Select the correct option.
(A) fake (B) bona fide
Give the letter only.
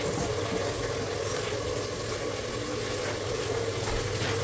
B